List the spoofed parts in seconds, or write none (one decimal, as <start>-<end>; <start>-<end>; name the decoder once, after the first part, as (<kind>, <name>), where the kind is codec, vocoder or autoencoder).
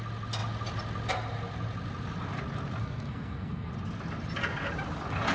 2.8-3.7 (codec, SNAC)